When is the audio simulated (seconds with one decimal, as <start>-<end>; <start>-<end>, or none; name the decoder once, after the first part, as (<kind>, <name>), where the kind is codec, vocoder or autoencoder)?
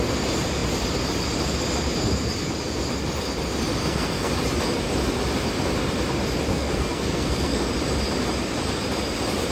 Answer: 3.8-4.3 (codec, SNAC); 6.5-7.7